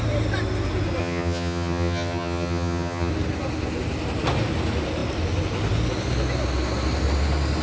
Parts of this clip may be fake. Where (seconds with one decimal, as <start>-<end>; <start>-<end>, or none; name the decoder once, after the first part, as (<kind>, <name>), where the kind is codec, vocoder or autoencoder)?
1.0-3.1 (vocoder, HiFi-GAN)